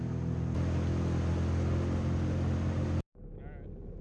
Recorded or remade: recorded